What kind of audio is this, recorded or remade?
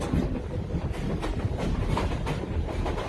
recorded